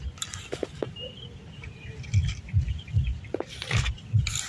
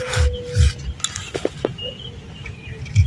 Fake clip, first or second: first